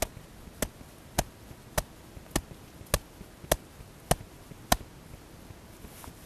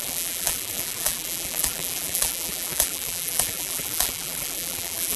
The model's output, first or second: second